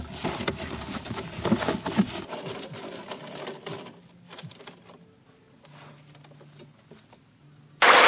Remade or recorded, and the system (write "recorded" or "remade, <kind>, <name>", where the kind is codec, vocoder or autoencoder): recorded